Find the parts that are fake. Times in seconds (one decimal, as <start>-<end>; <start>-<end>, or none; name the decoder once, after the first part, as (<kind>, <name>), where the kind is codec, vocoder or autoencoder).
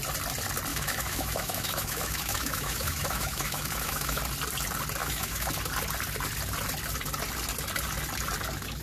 0.7-4.2 (autoencoder, DAC-VAE); 5.0-5.5